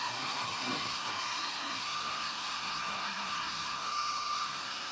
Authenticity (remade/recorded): remade